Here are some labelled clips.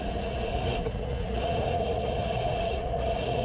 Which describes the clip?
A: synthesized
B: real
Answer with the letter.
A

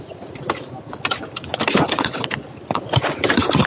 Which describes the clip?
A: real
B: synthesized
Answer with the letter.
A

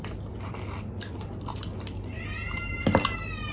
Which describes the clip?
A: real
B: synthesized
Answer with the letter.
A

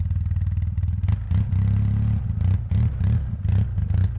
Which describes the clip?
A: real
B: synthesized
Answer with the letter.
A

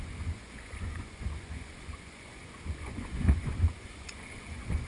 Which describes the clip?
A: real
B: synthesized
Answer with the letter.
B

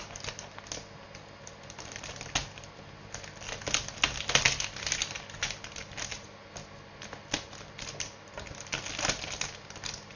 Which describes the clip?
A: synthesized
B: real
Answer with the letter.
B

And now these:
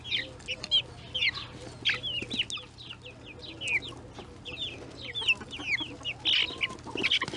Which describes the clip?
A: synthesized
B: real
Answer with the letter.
B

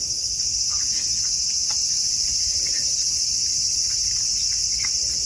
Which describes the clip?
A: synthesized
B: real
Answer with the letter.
B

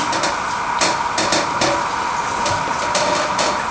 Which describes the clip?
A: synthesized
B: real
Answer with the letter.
B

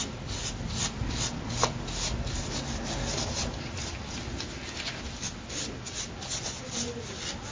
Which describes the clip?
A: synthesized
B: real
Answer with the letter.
B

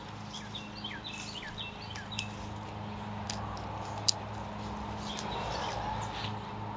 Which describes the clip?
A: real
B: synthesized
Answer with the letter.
A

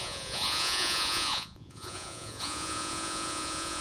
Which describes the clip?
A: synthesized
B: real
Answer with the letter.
A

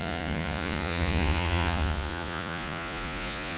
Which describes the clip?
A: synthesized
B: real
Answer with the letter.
A